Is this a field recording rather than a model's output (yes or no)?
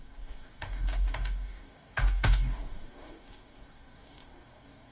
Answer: no